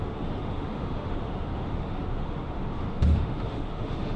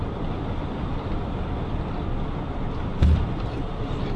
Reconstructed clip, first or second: first